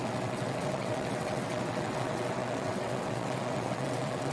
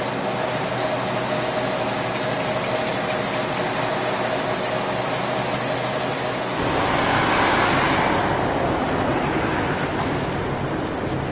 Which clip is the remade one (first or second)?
first